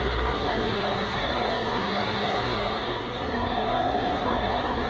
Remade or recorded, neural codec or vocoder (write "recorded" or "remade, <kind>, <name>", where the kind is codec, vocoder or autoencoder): remade, codec, SNAC